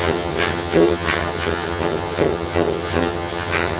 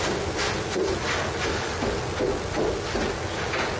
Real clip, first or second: second